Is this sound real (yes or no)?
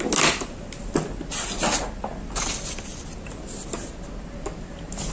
yes